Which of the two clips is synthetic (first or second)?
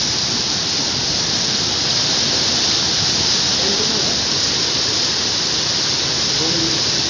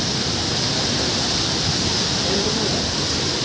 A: first